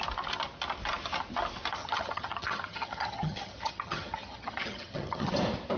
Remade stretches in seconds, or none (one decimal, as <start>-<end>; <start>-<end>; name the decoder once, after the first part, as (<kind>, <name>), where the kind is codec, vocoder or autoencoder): 1.8-5.3 (vocoder, HiFi-GAN)

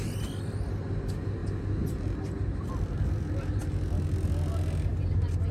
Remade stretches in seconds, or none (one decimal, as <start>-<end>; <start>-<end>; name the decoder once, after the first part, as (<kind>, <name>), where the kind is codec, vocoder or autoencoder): none